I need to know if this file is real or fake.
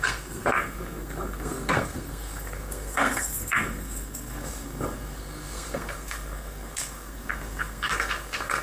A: fake